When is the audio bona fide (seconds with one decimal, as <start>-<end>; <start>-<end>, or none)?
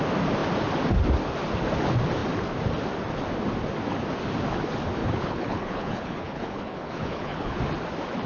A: 0.0-5.0; 7.6-8.3